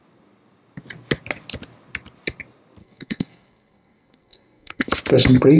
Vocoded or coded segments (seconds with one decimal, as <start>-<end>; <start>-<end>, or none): 2.8-4.9